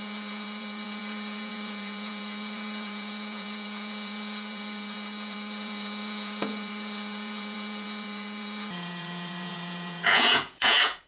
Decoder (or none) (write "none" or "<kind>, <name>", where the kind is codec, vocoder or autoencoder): vocoder, Vocos